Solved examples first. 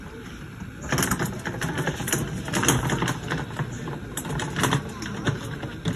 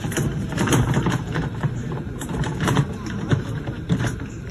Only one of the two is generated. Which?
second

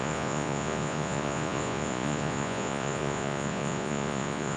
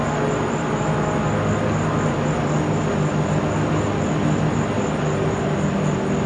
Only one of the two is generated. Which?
first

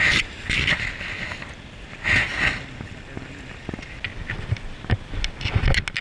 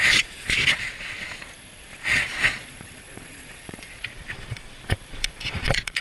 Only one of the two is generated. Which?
second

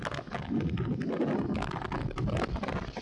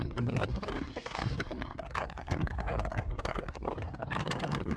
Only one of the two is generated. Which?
second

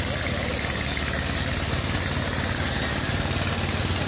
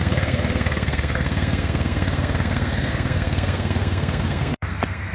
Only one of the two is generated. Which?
second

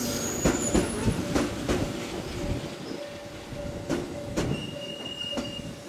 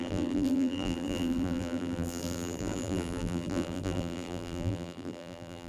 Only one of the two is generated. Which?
second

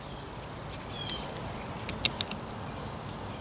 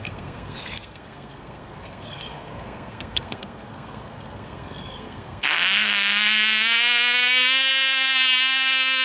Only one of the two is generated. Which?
second